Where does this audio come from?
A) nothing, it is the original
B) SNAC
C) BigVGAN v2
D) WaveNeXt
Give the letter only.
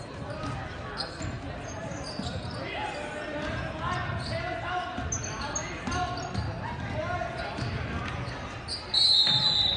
A